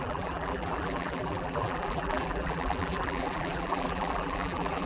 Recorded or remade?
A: remade